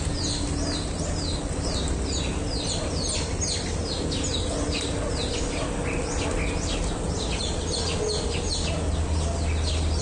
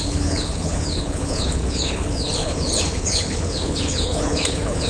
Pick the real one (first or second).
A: first